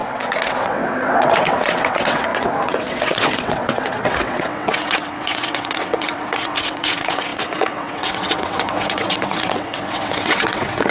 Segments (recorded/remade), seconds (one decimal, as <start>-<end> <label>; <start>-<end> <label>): 0.0-10.9 remade